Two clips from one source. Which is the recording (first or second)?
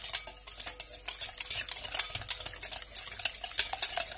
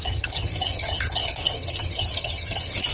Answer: first